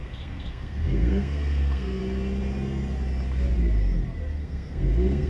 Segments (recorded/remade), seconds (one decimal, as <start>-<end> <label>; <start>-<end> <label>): 0.0-2.0 remade; 2.0-4.4 recorded; 4.4-5.3 remade